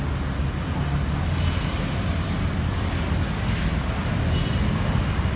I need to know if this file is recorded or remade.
recorded